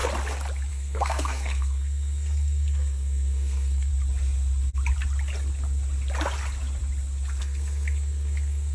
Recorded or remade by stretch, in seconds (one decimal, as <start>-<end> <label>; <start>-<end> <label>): 0.0-0.7 recorded; 0.7-3.9 remade; 3.9-7.4 recorded; 7.4-8.7 remade